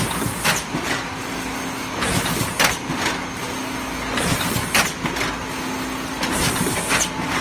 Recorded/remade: recorded